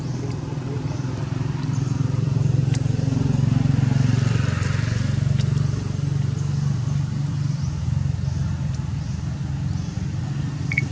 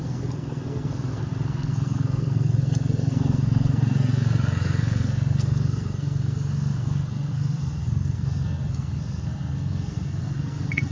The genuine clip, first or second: first